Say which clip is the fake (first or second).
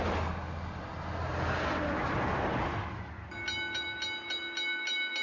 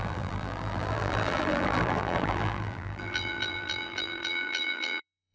second